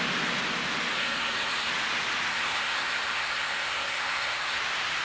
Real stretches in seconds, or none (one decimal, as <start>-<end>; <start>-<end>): 0.0-0.9; 1.7-2.3; 4.6-5.0